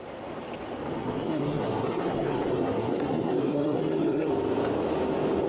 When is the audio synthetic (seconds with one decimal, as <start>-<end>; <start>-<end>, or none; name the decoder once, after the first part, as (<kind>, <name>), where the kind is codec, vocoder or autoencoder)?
1.0-4.3 (codec, SNAC)